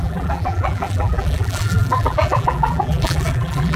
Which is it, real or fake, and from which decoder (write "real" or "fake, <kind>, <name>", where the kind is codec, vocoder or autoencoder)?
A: fake, vocoder, BigVGAN v2